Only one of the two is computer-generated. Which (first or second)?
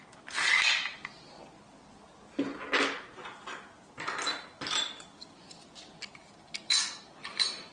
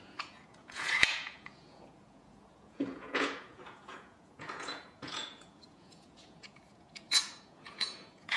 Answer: second